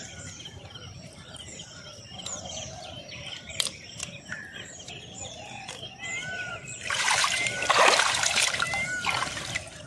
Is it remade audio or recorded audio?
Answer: remade